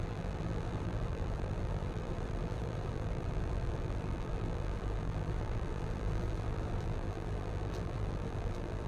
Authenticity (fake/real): fake